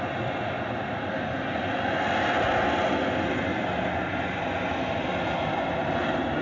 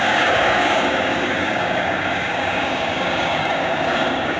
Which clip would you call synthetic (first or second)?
second